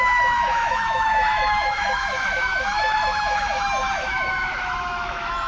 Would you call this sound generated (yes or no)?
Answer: yes